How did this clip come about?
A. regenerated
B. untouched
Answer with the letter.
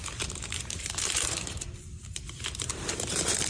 A